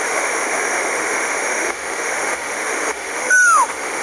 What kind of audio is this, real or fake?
fake